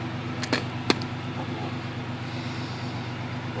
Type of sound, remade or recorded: recorded